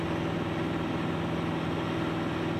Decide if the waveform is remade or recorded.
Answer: recorded